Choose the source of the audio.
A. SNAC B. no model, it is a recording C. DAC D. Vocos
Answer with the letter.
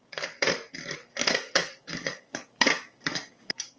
C